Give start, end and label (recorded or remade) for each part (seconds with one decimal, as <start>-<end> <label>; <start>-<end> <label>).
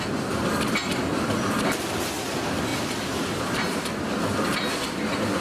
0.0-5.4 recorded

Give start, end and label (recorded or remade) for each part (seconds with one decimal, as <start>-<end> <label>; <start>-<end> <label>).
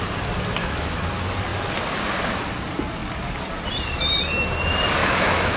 0.0-0.6 recorded; 0.6-1.1 remade; 1.1-5.0 recorded; 5.0-5.6 remade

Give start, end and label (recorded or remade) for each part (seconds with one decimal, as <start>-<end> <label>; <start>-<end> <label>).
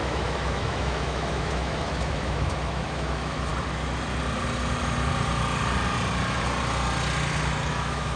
0.0-3.5 remade; 3.5-7.7 recorded; 7.7-8.2 remade